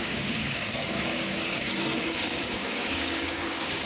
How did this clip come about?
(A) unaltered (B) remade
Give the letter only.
B